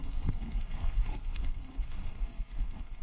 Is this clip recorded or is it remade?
remade